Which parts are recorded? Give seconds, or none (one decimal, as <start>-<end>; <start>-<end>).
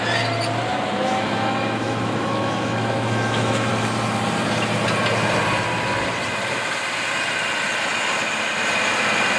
0.0-0.7; 3.7-9.4